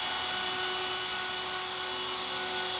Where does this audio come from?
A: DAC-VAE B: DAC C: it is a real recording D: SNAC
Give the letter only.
C